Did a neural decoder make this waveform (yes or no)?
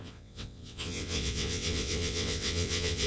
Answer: yes